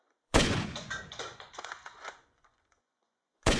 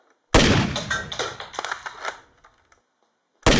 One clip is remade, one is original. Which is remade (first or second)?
first